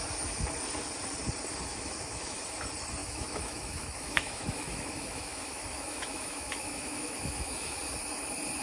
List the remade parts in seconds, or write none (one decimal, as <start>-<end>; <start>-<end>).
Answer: 1.7-2.4; 3.0-7.8